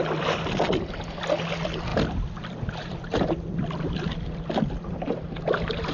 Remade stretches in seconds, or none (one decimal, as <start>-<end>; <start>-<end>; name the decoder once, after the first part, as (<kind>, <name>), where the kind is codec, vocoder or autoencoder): 0.0-5.9 (vocoder, BigVGAN v2)